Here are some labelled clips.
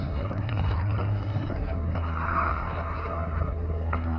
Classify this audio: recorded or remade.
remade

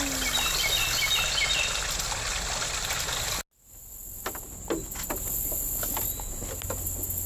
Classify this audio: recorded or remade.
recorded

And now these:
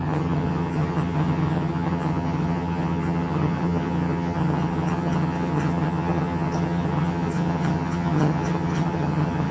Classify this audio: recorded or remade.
remade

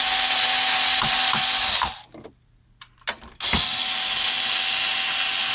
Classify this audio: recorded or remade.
recorded